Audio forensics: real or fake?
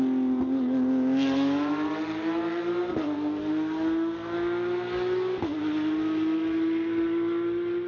real